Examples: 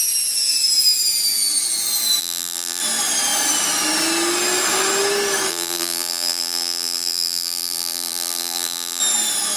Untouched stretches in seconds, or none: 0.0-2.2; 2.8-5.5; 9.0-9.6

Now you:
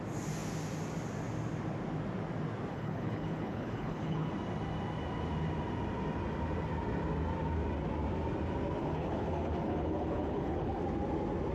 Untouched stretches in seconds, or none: 0.0-2.7; 4.3-8.8; 10.8-11.5

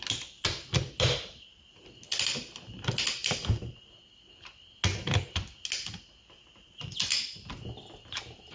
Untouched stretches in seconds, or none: 0.0-3.2; 3.8-8.5

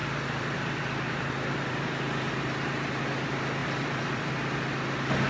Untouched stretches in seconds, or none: 2.9-3.6; 4.3-5.3